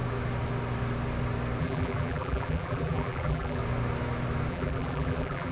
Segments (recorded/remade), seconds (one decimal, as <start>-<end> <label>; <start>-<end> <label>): 0.0-1.6 recorded; 1.6-3.6 remade; 3.6-4.5 recorded; 4.5-5.5 remade